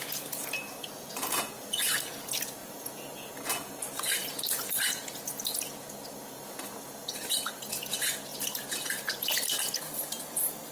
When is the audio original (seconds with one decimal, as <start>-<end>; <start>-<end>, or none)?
none